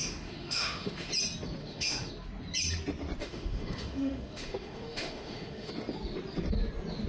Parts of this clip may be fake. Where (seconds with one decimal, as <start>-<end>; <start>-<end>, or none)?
0.0-1.1; 1.6-2.1; 3.2-5.7